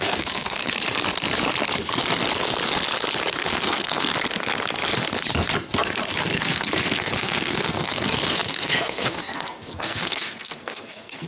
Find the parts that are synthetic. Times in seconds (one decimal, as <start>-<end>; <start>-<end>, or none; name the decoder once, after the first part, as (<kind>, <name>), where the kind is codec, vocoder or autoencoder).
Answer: 0.0-0.6 (codec, SNAC); 3.5-4.1; 6.2-11.3

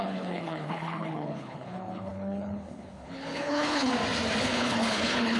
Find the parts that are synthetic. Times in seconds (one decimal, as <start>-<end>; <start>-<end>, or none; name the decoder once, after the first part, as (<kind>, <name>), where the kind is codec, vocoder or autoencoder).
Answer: 0.0-3.9 (codec, HILCodec); 4.4-5.4

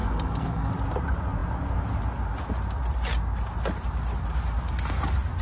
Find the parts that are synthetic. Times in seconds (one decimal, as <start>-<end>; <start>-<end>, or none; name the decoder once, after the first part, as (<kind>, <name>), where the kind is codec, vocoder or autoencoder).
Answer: 0.0-0.7 (codec, SNAC)

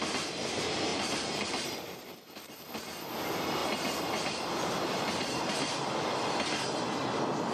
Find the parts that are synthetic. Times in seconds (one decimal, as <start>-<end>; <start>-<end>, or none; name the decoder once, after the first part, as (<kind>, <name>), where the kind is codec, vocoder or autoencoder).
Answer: 0.9-2.7 (vocoder, BigVGAN v2); 3.6-5.9